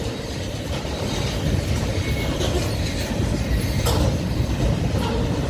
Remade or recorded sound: recorded